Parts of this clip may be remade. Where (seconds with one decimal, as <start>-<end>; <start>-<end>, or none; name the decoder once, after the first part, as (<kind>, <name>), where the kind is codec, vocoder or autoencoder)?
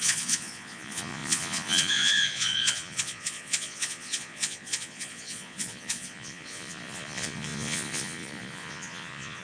0.0-9.4 (vocoder, Vocos)